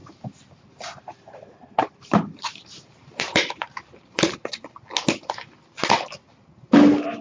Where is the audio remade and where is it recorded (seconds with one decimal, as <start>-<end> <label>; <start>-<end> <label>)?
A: 0.0-4.3 remade; 4.3-7.2 recorded